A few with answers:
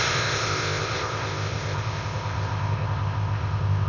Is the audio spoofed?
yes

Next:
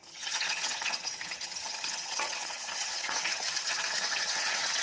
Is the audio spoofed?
yes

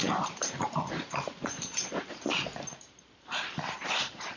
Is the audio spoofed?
yes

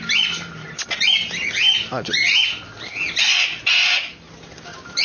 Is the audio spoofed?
no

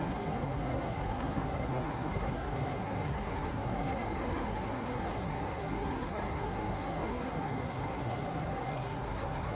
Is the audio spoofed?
yes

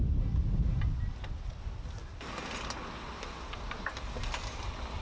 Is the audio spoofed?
no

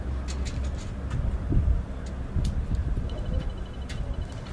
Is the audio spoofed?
no